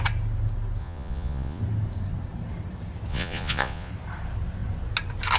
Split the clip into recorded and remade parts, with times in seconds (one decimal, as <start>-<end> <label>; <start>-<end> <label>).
0.0-0.8 recorded; 0.8-1.6 remade; 1.6-3.1 recorded; 3.1-3.9 remade; 3.9-5.4 recorded